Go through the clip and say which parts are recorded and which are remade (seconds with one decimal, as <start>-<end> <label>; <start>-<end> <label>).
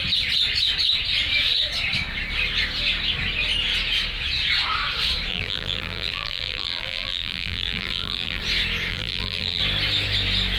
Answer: 0.0-5.3 recorded; 5.3-8.4 remade; 8.4-8.9 recorded; 8.9-9.6 remade; 9.6-10.6 recorded